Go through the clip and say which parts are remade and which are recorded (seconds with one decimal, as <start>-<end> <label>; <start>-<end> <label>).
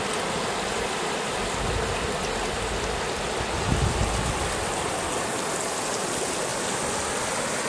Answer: 0.0-7.7 recorded